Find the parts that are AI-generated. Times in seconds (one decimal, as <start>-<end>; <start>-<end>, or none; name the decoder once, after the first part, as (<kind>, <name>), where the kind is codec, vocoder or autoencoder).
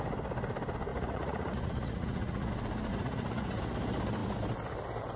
0.9-2.5 (vocoder, Vocos); 2.9-3.6